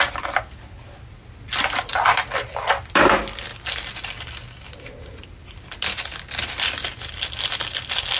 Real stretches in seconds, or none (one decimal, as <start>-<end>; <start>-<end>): 0.0-8.2